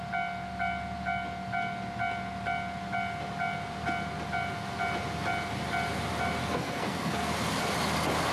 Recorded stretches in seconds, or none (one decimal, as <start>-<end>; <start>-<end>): 0.0-6.5; 7.3-8.3